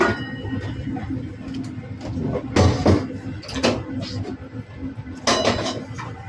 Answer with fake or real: real